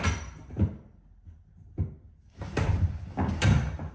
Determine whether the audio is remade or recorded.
recorded